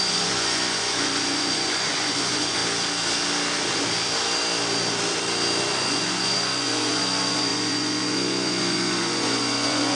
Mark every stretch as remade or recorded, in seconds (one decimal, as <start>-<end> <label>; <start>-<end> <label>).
0.0-2.6 remade; 2.6-5.6 recorded; 5.6-9.9 remade